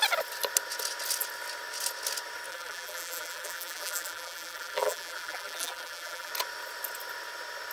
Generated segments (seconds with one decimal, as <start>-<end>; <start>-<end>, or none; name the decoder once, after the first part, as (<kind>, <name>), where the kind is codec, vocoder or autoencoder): 2.5-6.3 (vocoder, BigVGAN v2)